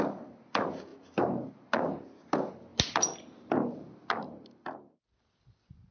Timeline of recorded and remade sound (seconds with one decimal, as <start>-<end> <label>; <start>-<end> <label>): 0.0-5.9 recorded